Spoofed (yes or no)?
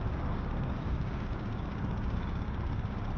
yes